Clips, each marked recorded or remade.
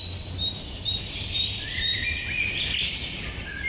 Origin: remade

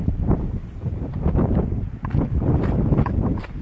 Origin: remade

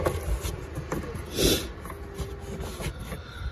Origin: recorded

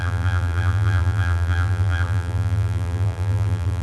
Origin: remade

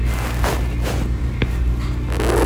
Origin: recorded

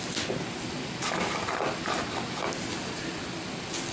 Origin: recorded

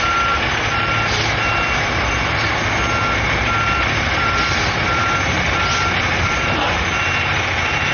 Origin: recorded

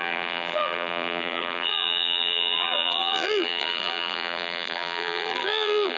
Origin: remade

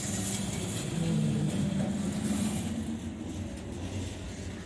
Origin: recorded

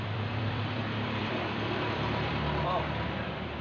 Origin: remade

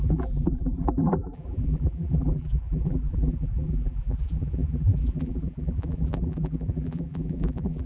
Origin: remade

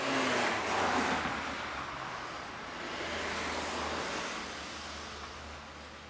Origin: recorded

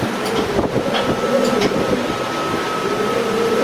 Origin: recorded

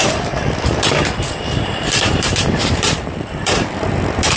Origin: remade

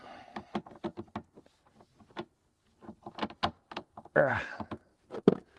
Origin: recorded